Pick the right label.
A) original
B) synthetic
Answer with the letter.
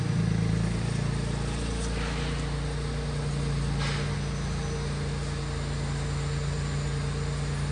A